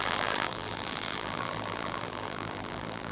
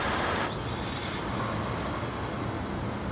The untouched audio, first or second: second